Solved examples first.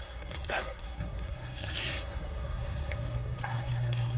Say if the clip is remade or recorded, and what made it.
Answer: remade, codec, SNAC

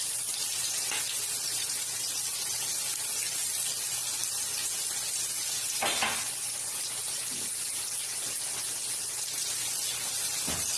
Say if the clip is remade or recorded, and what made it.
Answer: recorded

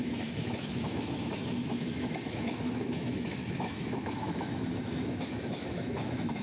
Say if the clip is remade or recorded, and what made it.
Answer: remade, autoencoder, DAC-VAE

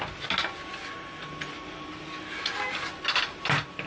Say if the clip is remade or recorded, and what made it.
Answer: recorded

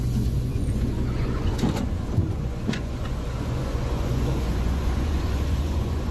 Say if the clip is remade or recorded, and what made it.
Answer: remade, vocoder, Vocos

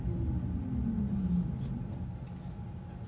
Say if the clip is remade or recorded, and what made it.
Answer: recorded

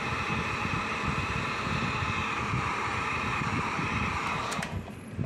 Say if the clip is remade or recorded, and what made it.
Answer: remade, vocoder, BigVGAN v2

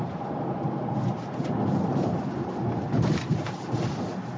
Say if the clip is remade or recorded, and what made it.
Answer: recorded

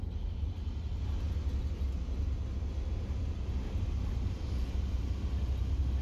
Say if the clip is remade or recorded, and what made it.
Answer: recorded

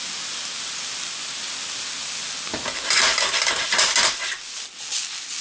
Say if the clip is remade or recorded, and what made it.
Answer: recorded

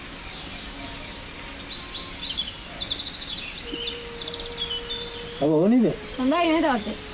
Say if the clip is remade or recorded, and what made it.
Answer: recorded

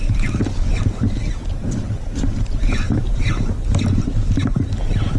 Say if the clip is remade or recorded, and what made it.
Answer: recorded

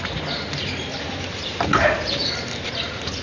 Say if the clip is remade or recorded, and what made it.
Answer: recorded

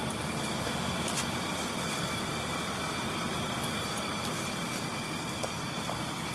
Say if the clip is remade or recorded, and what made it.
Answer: remade, vocoder, BigVGAN v2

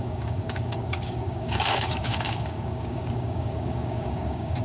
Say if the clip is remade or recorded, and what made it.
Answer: remade, codec, DAC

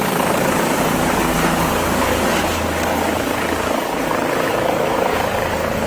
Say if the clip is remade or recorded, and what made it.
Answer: remade, codec, DAC